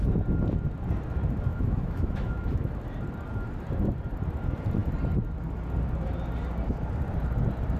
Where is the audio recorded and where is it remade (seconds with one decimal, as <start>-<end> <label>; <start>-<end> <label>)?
0.0-1.5 recorded; 1.5-2.7 remade; 2.7-7.8 recorded